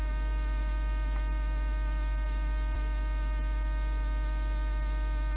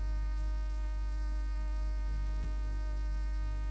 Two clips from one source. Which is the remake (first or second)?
second